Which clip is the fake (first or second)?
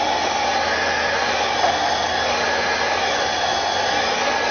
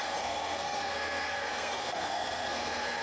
second